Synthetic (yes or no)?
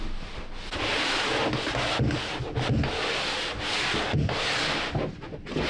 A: no